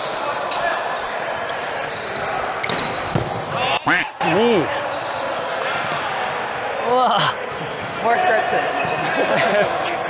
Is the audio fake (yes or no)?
no